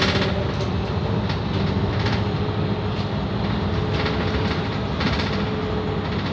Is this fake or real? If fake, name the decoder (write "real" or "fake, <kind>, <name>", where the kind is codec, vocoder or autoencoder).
real